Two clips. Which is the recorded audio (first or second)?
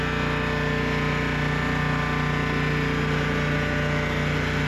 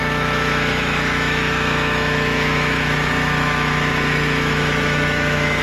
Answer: first